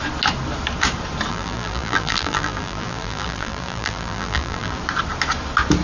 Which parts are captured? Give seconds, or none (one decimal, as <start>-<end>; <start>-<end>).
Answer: 0.0-1.3; 4.8-5.8